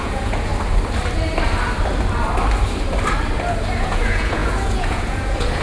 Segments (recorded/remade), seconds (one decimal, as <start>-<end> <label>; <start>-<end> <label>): 0.0-0.5 remade; 0.5-3.8 recorded; 3.8-5.6 remade